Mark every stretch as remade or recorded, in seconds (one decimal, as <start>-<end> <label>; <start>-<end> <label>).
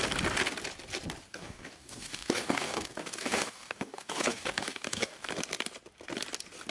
0.0-1.3 recorded; 1.3-5.3 remade; 5.3-6.7 recorded